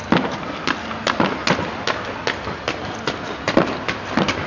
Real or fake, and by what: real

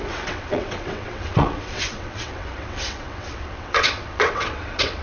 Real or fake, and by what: fake, vocoder, WaveNeXt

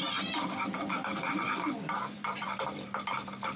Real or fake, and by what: fake, vocoder, BigVGAN v2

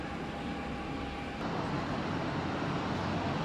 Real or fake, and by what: real